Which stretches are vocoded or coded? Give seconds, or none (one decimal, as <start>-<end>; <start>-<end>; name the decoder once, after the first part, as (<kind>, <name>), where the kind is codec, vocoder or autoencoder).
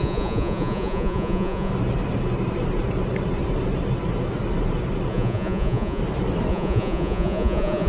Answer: 0.0-1.7 (vocoder, Vocos); 5.1-6.0; 6.5-7.9